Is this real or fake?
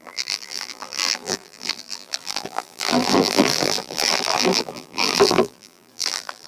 fake